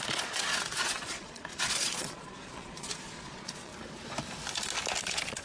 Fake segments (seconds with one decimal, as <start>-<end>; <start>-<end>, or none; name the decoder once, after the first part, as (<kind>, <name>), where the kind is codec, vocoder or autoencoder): 0.0-3.7 (vocoder, Vocos); 5.0-5.4